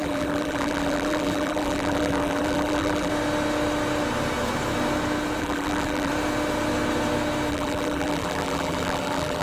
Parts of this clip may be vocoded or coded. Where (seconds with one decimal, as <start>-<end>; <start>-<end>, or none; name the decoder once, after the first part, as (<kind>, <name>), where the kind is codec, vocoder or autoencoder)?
0.0-3.1 (vocoder, BigVGAN v2); 5.4-6.1; 7.5-9.4